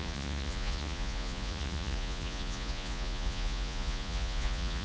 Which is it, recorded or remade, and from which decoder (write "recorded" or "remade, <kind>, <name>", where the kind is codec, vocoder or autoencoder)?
remade, vocoder, Vocos